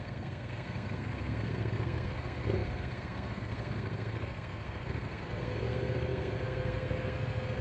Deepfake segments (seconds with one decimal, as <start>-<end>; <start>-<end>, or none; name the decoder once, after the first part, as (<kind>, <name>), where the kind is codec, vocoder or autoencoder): 0.0-7.6 (codec, SNAC)